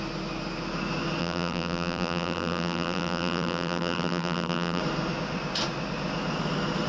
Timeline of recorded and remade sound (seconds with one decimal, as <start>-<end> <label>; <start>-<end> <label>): 0.0-1.2 recorded; 1.2-4.8 remade; 4.8-6.9 recorded